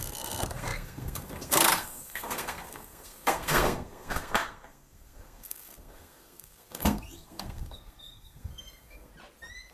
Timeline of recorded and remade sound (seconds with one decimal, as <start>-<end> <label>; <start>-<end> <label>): 0.0-9.1 remade; 9.1-9.7 recorded